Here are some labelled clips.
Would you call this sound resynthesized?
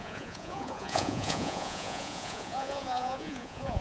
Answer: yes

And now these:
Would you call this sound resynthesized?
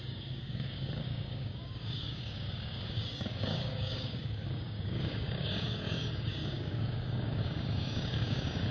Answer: yes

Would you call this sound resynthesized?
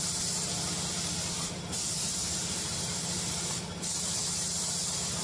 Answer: no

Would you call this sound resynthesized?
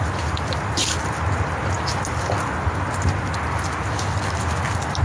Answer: no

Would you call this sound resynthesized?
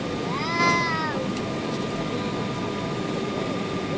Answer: no